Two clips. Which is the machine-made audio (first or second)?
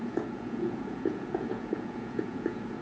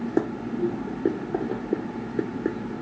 first